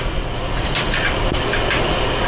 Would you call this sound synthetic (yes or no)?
no